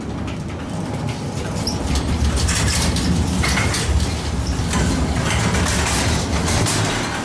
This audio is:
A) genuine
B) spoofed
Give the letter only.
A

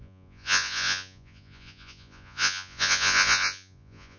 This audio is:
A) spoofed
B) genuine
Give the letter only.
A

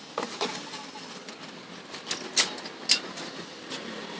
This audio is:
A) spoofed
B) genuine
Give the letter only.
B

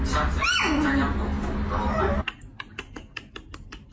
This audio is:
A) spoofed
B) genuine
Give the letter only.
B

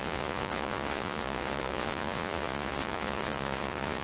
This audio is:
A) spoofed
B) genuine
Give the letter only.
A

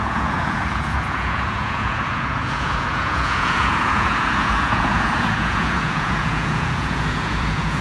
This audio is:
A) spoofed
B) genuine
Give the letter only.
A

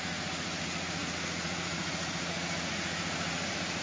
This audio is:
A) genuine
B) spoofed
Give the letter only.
B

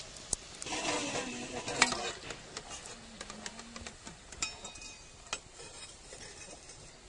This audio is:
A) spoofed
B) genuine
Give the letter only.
B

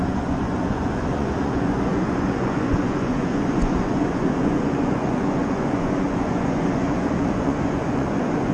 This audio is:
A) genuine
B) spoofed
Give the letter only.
B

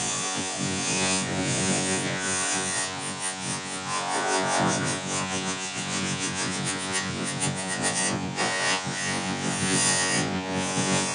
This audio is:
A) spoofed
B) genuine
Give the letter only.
A